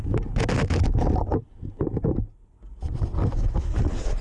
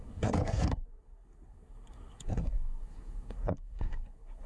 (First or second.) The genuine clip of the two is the first